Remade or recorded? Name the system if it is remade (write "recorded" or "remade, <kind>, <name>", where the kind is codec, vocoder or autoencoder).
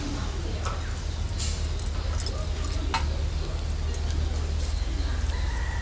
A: recorded